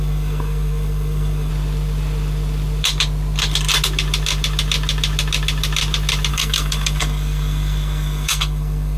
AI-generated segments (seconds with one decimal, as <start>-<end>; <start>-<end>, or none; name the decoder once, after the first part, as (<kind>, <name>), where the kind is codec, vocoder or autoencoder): 0.0-1.5 (codec, SNAC); 6.3-9.0

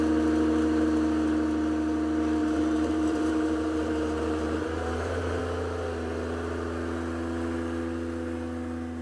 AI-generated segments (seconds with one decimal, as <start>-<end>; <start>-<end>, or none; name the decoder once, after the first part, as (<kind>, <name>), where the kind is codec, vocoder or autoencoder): 2.4-5.4 (vocoder, BigVGAN v2)

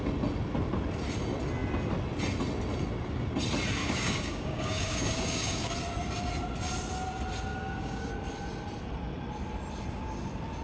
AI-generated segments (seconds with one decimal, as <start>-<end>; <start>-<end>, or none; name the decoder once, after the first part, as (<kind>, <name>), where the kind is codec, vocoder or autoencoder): 3.8-5.7 (codec, DAC); 7.5-8.1

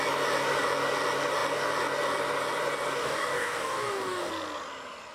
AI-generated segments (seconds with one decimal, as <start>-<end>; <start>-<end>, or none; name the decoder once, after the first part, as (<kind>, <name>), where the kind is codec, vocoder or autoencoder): 3.0-4.3 (codec, DAC)

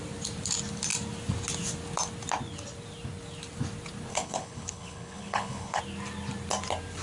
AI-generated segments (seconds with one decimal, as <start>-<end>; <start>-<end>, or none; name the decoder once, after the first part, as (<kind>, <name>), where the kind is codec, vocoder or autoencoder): 4.1-5.8 (codec, HILCodec)

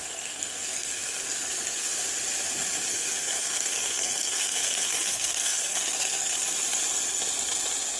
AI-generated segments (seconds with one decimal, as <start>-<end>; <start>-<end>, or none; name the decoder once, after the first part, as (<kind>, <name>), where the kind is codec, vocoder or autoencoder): 0.0-1.9 (codec, SNAC); 2.9-6.3

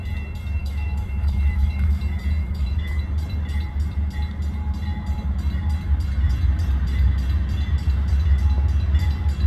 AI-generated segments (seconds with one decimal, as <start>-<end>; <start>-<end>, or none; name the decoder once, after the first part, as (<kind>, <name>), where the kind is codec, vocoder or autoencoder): 0.6-2.0 (autoencoder, DAC-VAE); 2.4-3.0